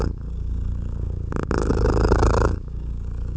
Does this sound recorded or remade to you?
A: remade